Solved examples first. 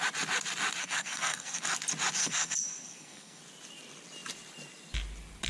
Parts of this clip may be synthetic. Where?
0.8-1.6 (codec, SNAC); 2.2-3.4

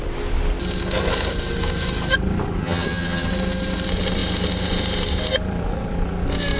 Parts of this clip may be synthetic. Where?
2.6-3.3 (vocoder, HiFi-GAN)

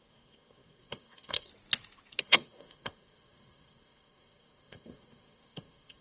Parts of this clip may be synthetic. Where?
0.0-1.5 (codec, SNAC); 2.2-6.0

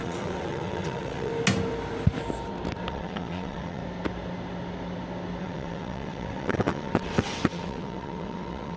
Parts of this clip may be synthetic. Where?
0.0-1.3 (vocoder, WaveNeXt); 2.9-3.8; 5.4-8.8

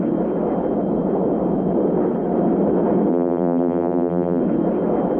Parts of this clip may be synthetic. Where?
3.1-4.4 (vocoder, BigVGAN v2)

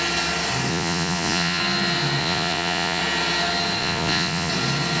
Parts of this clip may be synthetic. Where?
0.7-1.6 (vocoder, Vocos); 2.2-3.0; 3.8-4.5